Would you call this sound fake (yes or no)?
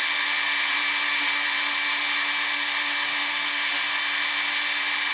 no